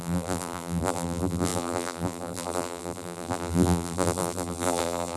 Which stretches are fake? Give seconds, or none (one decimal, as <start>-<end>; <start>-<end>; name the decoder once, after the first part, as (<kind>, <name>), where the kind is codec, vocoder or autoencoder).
0.0-5.2 (vocoder, BigVGAN v2)